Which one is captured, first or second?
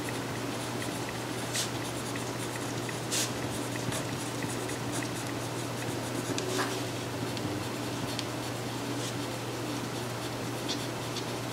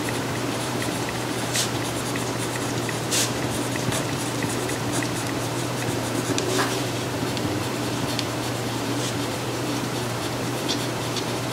first